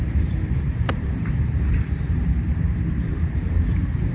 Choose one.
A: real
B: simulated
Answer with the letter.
B